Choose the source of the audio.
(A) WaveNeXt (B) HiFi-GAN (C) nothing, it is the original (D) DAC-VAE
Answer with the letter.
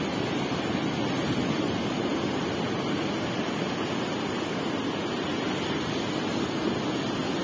C